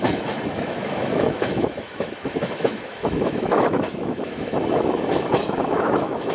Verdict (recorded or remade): remade